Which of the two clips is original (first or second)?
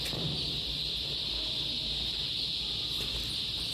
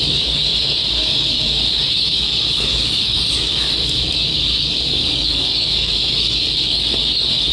first